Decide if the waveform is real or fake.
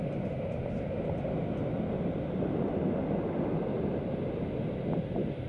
real